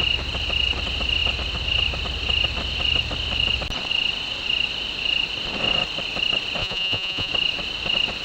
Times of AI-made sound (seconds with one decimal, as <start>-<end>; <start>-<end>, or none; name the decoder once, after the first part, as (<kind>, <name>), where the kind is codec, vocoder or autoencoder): 6.6-7.3 (vocoder, Vocos)